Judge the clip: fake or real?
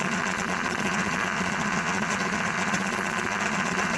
fake